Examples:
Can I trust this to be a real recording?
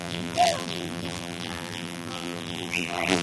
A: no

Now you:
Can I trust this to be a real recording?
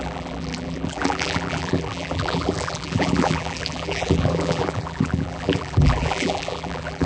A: no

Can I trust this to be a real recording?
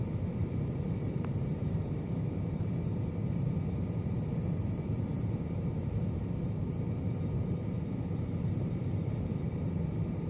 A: no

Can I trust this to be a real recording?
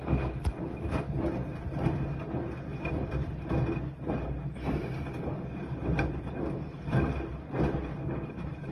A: yes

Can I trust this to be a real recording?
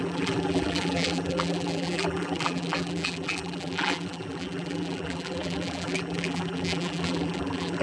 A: no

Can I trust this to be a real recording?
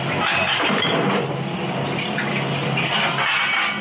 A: yes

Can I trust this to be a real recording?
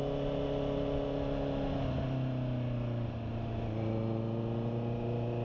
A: yes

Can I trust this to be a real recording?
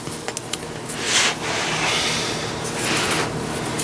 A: yes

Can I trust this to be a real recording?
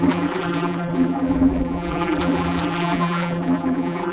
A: no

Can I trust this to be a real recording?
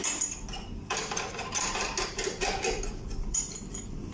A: no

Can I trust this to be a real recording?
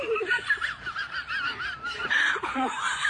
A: no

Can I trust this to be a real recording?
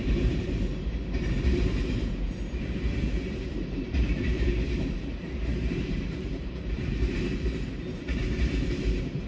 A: no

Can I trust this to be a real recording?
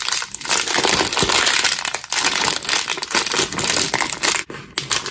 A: yes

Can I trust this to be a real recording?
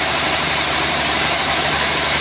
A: no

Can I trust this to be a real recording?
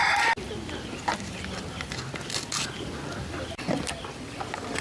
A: yes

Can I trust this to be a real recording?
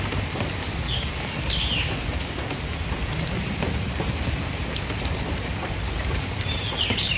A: no